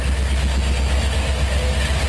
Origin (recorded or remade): recorded